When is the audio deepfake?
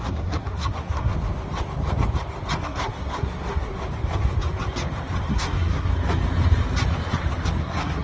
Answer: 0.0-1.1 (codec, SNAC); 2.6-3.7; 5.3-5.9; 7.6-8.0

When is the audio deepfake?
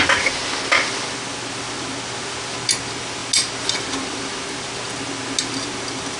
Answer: none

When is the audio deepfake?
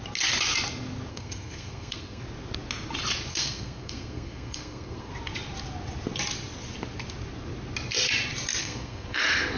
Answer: 1.1-2.2 (codec, SNAC); 3.3-5.1; 8.6-9.2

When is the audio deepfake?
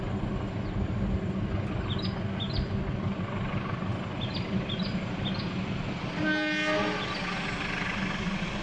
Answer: none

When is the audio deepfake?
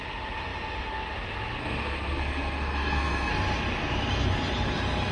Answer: 1.6-3.3 (codec, SNAC)